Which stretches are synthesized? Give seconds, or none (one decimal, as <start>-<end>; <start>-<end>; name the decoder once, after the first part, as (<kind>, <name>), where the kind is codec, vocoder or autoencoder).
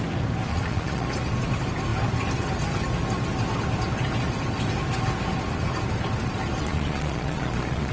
0.5-1.1 (vocoder, Vocos); 6.6-7.9